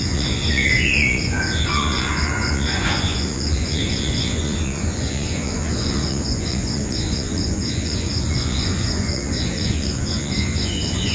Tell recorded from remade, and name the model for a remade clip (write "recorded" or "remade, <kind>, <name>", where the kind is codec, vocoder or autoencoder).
remade, vocoder, Vocos